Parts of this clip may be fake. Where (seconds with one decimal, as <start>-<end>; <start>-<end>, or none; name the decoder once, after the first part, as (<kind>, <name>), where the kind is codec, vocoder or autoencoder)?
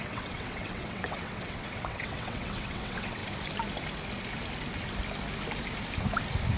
0.0-3.2 (vocoder, WaveNeXt)